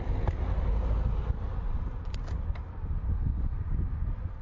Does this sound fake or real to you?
real